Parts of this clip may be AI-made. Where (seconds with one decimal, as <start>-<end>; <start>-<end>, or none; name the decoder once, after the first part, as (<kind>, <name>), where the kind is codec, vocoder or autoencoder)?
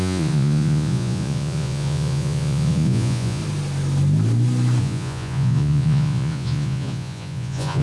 0.0-3.4 (vocoder, Vocos); 4.8-7.8